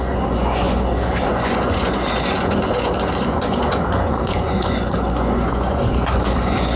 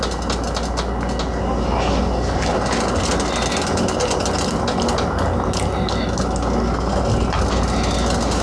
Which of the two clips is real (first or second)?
second